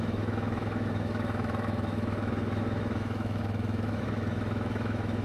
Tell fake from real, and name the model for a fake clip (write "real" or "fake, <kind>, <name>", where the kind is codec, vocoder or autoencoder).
fake, autoencoder, DAC-VAE